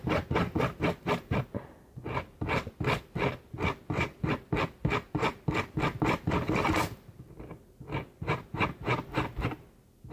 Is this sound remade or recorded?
recorded